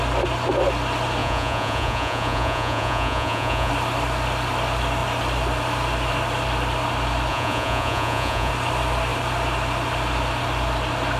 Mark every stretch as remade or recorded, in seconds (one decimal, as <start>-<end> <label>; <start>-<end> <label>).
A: 0.0-1.2 recorded; 1.2-3.7 remade; 3.7-7.3 recorded; 7.3-8.5 remade; 8.5-11.2 recorded